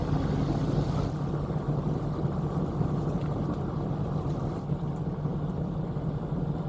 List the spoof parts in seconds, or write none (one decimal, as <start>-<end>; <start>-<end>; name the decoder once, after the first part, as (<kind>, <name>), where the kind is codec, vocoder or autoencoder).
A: 5.3-5.8 (vocoder, BigVGAN v2)